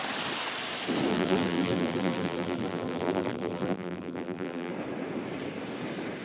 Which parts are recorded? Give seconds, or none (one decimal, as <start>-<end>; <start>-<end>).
0.0-1.1; 4.7-6.2